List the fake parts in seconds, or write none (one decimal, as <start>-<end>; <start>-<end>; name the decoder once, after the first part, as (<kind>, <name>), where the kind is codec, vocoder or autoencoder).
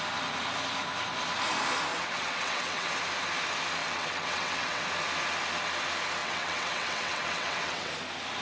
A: 1.9-2.9 (vocoder, WaveNeXt); 3.8-4.8; 6.2-7.9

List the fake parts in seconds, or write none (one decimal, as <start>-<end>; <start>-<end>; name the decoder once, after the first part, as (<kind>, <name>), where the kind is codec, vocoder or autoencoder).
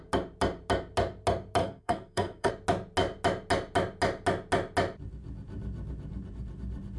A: 1.6-2.5 (codec, SNAC)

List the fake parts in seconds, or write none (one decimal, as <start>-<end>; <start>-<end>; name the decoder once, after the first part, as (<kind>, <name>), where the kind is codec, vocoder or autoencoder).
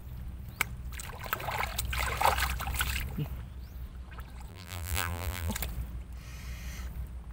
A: 4.5-5.5 (vocoder, BigVGAN v2)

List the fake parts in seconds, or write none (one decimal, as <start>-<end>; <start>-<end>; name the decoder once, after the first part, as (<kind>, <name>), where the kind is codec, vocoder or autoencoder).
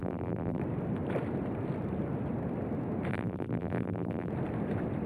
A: 0.0-0.6 (vocoder, BigVGAN v2); 3.1-4.3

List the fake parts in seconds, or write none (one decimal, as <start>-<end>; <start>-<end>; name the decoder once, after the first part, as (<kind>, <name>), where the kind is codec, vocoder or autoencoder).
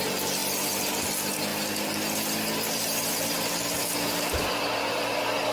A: none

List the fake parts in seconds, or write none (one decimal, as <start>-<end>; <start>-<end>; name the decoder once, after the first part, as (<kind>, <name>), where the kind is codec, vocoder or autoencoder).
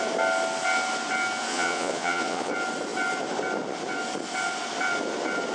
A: 1.5-2.5 (vocoder, Vocos)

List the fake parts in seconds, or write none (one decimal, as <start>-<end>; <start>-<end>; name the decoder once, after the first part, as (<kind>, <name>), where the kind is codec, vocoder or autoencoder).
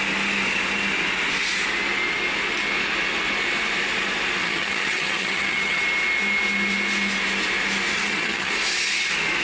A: 4.4-5.8 (vocoder, HiFi-GAN); 7.9-8.5